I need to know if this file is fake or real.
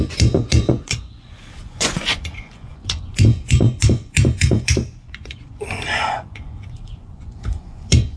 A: fake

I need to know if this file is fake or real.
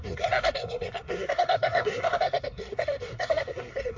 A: fake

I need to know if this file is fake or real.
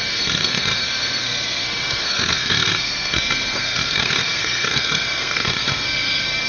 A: fake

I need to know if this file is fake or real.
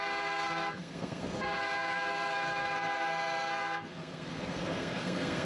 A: fake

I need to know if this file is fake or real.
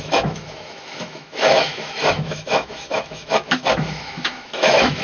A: fake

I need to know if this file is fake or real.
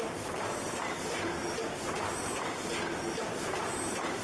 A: real